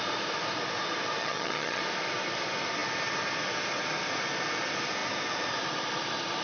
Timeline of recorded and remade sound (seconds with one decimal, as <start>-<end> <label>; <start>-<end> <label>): 0.0-1.2 recorded; 1.2-1.8 remade; 1.8-6.4 recorded